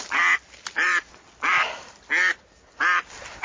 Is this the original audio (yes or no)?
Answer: yes